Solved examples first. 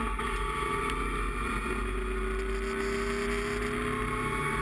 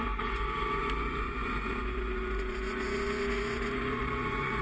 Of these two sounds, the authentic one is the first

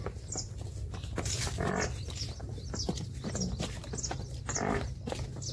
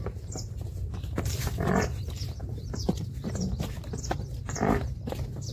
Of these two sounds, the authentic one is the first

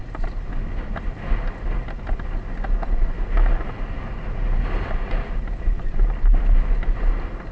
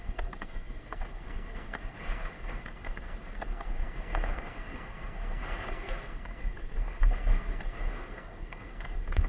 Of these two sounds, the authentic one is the first